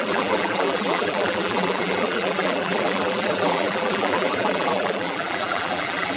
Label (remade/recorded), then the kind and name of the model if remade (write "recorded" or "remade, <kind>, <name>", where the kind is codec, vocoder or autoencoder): remade, vocoder, BigVGAN v2